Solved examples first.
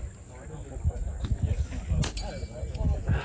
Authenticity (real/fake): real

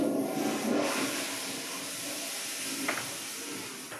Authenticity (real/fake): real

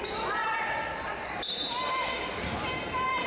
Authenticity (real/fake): real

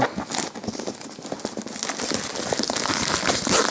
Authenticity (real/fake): real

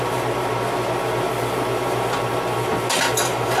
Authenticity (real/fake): real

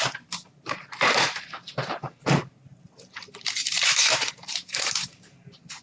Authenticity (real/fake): fake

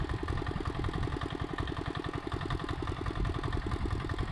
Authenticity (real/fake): real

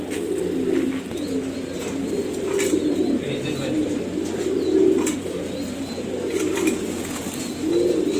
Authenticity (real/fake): real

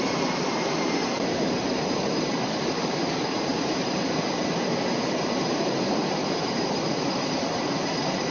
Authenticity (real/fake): fake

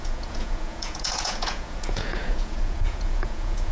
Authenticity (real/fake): fake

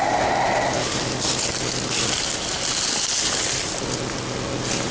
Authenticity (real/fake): real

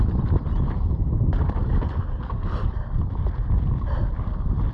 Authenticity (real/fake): real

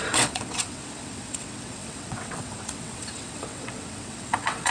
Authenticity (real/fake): fake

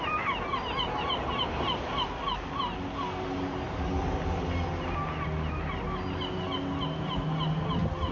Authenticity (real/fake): real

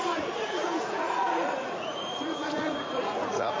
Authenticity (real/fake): fake